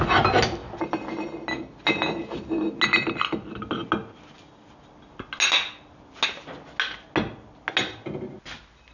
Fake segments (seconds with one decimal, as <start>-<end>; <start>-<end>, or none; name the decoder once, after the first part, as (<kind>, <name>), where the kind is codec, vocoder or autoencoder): none